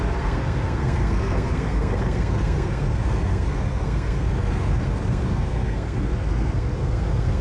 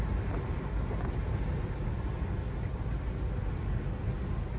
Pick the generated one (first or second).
first